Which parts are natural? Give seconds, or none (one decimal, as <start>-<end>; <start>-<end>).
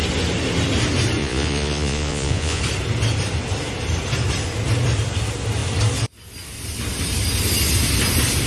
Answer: 0.0-1.2; 2.6-8.5